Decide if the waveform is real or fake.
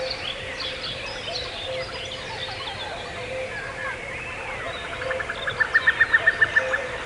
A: real